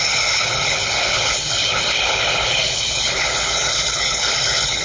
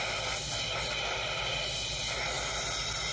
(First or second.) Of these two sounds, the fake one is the first